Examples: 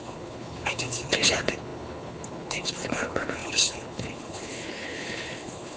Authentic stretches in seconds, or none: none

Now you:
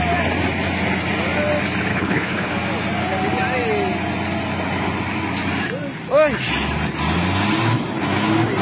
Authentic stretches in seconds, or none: 0.0-1.9; 2.5-8.6